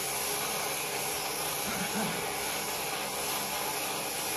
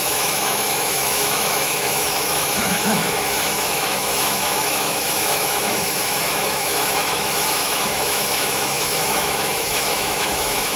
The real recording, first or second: first